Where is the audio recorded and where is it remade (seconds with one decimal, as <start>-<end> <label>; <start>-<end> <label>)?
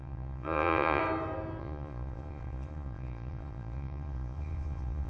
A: 0.0-1.0 remade; 1.0-1.6 recorded; 1.6-5.1 remade